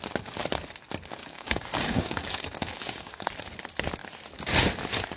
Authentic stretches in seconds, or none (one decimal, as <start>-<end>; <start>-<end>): 0.0-1.2; 3.3-5.2